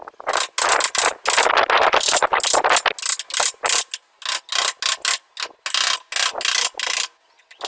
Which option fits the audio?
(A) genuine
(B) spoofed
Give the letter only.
A